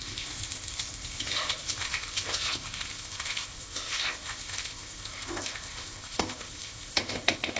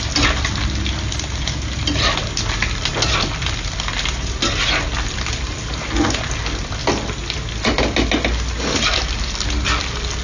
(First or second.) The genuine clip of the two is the second